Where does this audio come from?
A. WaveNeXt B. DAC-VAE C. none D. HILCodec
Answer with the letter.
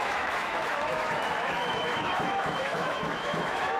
B